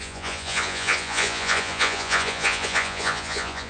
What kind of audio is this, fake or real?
fake